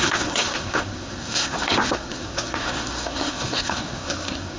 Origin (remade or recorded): remade